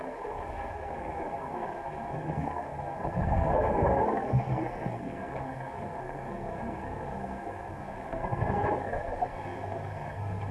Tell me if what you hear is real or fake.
fake